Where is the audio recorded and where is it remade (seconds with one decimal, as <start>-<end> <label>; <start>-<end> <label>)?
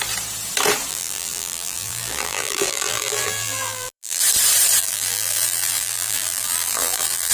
0.0-0.9 recorded; 0.9-4.2 remade; 4.2-4.8 recorded; 4.8-7.3 remade